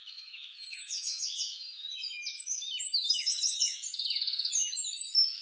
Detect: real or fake fake